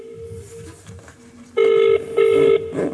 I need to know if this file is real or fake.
real